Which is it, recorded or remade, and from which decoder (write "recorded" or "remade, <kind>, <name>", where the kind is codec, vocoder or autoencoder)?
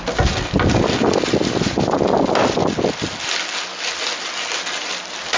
recorded